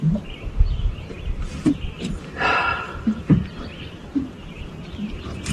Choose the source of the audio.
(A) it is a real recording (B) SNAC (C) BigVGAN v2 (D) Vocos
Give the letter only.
C